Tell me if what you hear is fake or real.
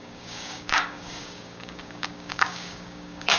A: fake